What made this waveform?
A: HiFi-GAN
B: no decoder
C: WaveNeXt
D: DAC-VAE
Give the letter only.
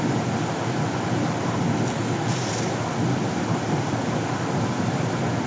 B